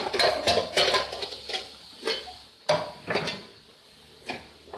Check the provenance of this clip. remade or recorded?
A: recorded